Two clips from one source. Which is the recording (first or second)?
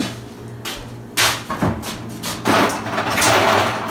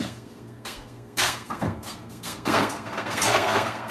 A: first